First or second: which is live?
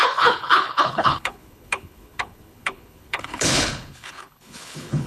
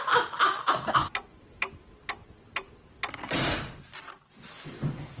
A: second